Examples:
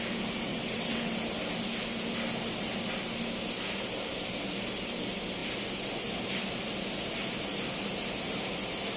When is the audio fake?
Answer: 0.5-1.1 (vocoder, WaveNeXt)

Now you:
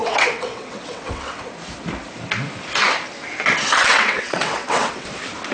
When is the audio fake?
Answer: 0.0-1.5 (vocoder, WaveNeXt); 3.9-5.1

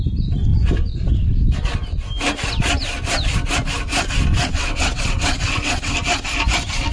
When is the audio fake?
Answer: 4.3-5.9 (vocoder, WaveNeXt)

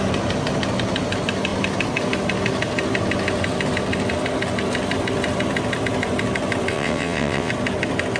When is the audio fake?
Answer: 6.7-7.5 (vocoder, WaveNeXt)